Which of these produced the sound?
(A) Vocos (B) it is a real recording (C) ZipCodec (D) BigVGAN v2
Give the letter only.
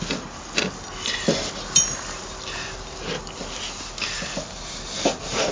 B